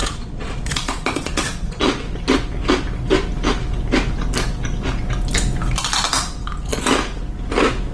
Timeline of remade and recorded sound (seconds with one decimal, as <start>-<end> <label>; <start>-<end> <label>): 0.0-1.8 remade; 1.8-7.9 recorded